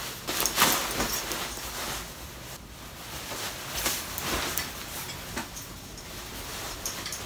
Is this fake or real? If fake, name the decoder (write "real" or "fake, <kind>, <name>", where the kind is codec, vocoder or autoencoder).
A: real